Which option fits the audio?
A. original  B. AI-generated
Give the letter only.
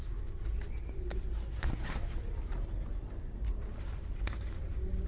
A